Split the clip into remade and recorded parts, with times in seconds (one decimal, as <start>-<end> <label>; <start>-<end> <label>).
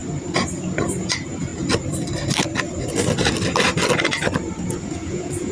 0.0-1.0 recorded; 1.0-1.5 remade; 1.5-4.8 recorded; 4.8-5.5 remade